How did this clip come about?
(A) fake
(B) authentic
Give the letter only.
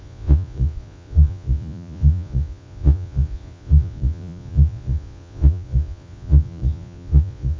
A